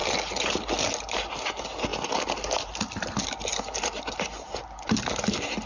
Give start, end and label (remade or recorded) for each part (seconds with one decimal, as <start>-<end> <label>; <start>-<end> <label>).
0.0-5.7 recorded